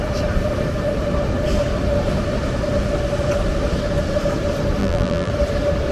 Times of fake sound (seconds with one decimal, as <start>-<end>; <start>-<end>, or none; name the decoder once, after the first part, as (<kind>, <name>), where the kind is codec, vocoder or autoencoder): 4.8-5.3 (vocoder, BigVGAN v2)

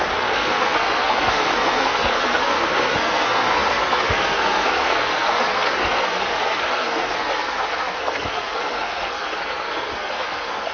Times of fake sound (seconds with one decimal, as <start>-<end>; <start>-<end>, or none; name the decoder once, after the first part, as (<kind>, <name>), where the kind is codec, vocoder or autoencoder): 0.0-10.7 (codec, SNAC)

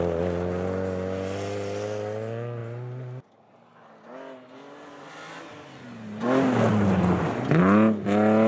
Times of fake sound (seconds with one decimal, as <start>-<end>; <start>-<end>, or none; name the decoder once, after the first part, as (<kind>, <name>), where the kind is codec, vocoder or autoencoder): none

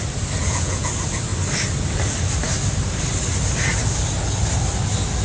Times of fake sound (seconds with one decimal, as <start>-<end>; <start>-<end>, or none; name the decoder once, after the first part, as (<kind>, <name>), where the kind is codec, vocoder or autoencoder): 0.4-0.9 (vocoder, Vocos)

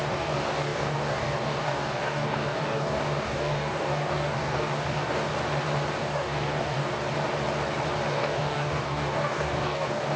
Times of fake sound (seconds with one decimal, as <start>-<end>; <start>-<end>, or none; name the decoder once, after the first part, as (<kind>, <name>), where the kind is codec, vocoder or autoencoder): 0.0-5.3 (codec, DAC); 6.0-6.9; 8.1-10.2

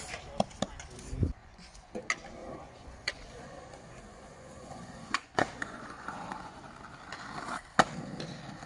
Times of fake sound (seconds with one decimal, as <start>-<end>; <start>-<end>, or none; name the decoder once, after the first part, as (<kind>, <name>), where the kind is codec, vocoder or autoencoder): 1.4-2.0 (vocoder, Vocos); 2.4-6.6

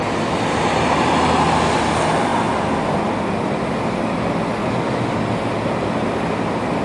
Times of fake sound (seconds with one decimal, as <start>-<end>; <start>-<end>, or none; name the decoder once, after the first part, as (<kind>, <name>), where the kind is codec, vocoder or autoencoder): none

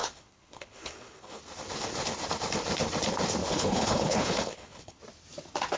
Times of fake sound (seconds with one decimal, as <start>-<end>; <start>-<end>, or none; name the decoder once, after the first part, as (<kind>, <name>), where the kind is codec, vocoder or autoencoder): 0.0-1.4 (codec, HILCodec); 3.4-5.0